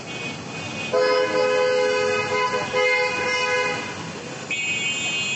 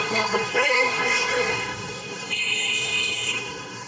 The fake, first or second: second